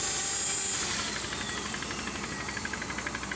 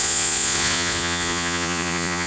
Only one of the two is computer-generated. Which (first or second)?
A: second